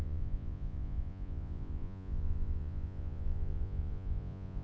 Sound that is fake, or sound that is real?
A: fake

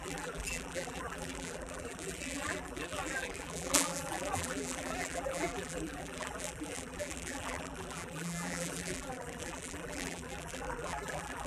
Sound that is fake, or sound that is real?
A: fake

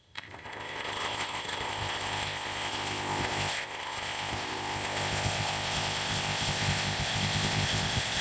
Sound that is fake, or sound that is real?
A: fake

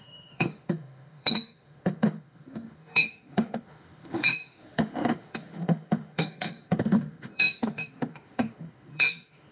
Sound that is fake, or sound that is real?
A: fake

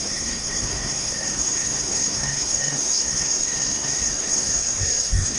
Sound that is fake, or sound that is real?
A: fake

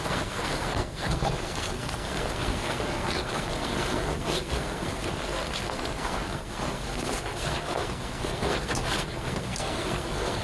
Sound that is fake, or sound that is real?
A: fake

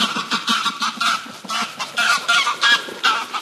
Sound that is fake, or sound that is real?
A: fake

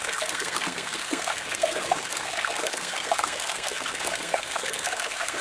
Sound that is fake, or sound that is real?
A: fake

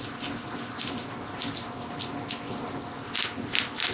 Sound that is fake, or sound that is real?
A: real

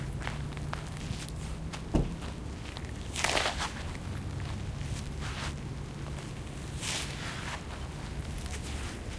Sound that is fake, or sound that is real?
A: real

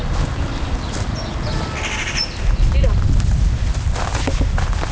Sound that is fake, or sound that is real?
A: real